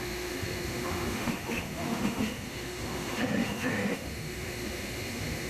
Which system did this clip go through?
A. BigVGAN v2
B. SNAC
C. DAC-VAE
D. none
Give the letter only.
C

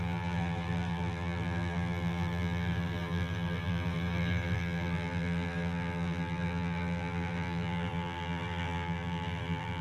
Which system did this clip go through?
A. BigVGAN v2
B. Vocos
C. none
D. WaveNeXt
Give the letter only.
A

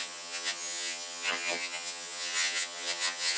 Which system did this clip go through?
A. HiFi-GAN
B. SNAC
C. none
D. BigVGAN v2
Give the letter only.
A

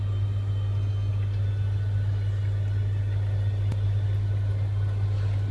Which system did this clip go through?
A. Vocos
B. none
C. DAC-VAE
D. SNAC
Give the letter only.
B